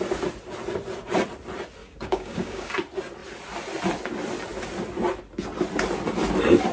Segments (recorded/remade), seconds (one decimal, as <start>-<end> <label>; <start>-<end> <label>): 0.0-1.8 recorded; 1.8-2.7 remade; 2.7-6.7 recorded